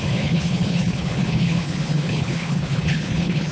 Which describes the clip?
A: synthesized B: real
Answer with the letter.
A